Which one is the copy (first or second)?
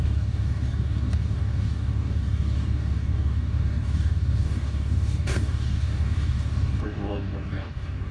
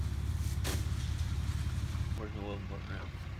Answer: first